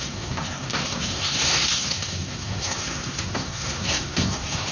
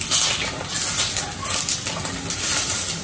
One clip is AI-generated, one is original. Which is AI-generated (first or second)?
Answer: first